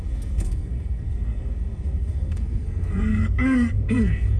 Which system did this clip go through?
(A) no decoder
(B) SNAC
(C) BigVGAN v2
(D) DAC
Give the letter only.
B